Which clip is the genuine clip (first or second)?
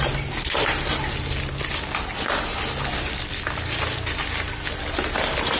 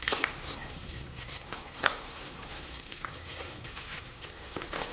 first